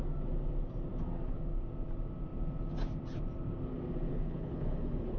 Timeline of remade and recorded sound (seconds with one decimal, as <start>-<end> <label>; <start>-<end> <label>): 0.0-4.1 recorded; 4.1-5.2 remade